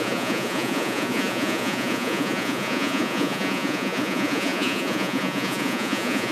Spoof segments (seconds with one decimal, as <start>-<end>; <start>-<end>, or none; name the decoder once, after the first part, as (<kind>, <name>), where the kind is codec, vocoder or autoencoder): 0.0-6.3 (vocoder, Vocos)